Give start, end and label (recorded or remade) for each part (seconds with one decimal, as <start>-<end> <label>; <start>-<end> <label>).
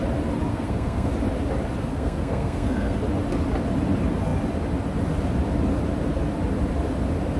0.0-0.5 recorded; 0.5-1.1 remade; 1.1-1.9 recorded; 1.9-3.0 remade; 3.0-7.4 recorded